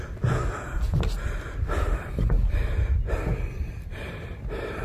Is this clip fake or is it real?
real